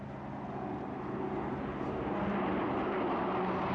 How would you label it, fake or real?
real